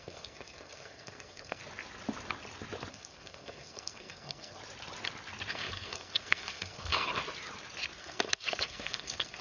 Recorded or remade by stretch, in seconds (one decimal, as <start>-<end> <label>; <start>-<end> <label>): 0.0-1.6 remade; 1.6-2.9 recorded; 2.9-4.6 remade; 4.6-5.5 recorded; 5.5-7.1 remade; 7.1-8.0 recorded; 8.0-9.4 remade